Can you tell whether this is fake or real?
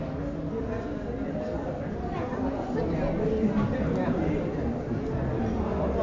real